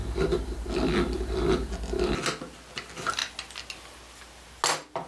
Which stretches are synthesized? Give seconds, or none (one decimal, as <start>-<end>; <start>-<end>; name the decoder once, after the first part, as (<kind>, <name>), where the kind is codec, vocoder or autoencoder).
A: none

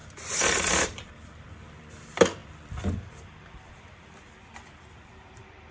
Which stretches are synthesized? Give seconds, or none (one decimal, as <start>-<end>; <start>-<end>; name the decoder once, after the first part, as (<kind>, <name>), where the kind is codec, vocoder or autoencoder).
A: 0.0-5.7 (vocoder, BigVGAN v2)

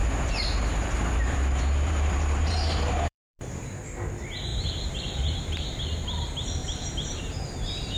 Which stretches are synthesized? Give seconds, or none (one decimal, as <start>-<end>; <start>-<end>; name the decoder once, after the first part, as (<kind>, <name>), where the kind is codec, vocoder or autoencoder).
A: 0.0-3.7 (vocoder, BigVGAN v2); 4.5-5.8; 6.6-7.2